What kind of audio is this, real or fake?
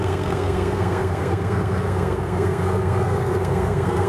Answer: fake